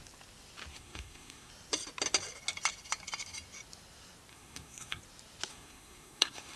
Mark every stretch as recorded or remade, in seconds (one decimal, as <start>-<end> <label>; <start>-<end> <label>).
0.0-0.7 recorded; 0.7-1.5 remade; 1.5-4.3 recorded; 4.3-5.0 remade; 5.0-5.5 recorded; 5.5-6.6 remade